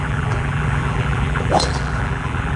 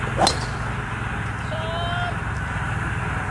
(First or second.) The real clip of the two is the second